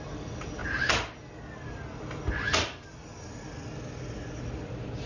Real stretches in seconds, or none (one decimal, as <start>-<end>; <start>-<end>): 0.0-5.1